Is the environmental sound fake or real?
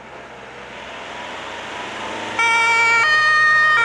real